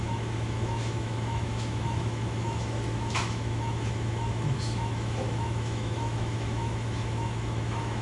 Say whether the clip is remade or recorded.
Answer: remade